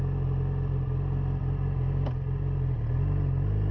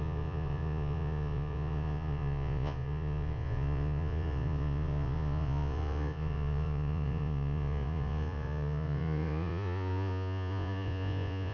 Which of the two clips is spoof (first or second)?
second